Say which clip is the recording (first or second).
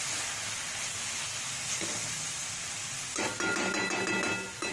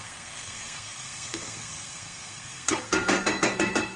first